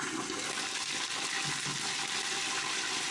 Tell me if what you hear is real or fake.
real